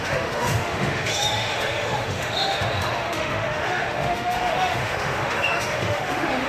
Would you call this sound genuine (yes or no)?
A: no